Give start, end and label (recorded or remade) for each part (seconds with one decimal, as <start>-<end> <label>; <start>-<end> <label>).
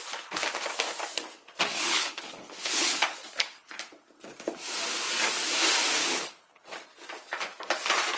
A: 0.0-1.7 recorded; 1.7-3.8 remade; 3.8-6.0 recorded; 6.0-6.6 remade; 6.6-8.2 recorded